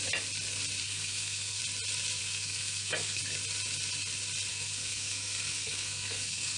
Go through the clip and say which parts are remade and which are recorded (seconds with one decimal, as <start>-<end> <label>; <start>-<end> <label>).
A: 0.0-0.8 recorded; 0.8-1.6 remade; 1.6-2.2 recorded; 2.2-3.2 remade; 3.2-4.5 recorded; 4.5-6.6 remade